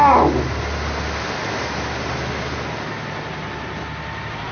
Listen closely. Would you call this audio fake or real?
real